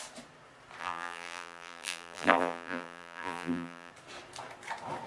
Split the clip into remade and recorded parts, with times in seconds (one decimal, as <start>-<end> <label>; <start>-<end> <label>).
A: 0.0-0.8 recorded; 0.8-3.9 remade; 3.9-5.1 recorded